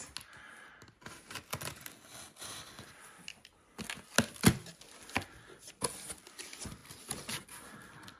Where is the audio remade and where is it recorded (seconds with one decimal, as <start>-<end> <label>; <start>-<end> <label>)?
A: 0.0-8.2 recorded